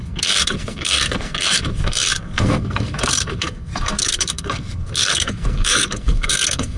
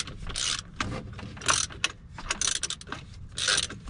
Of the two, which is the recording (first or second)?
second